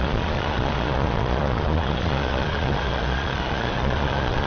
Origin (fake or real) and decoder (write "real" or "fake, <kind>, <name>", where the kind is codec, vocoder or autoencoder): fake, vocoder, Vocos